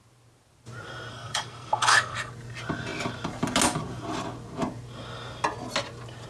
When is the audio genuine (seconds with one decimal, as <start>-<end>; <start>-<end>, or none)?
0.0-1.1; 2.3-6.3